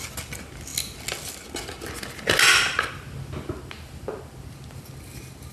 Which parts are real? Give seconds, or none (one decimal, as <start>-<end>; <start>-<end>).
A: 0.0-5.5